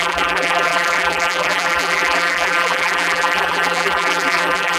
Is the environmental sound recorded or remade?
remade